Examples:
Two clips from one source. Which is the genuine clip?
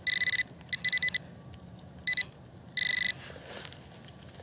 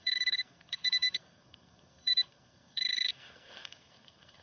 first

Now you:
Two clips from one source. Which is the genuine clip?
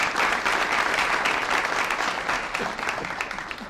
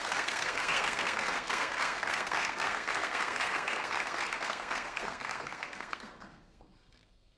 first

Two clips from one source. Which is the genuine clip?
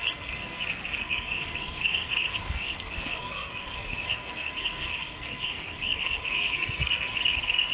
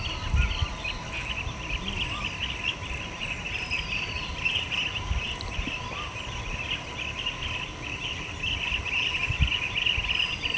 second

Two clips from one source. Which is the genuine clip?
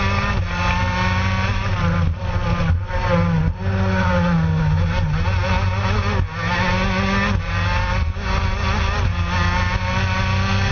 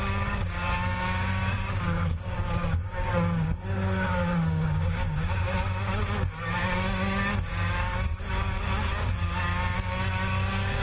first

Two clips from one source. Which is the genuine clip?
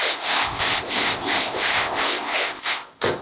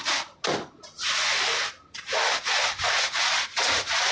second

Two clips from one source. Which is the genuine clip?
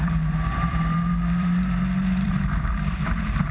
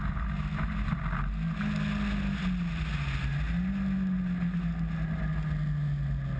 second